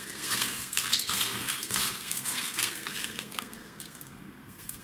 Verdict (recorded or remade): remade